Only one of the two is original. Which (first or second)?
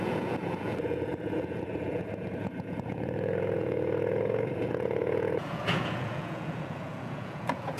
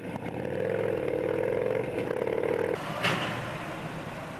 second